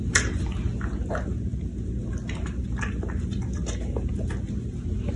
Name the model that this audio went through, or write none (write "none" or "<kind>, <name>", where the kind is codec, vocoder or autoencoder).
none